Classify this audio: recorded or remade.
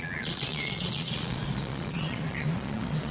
remade